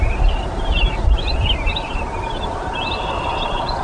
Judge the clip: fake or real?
real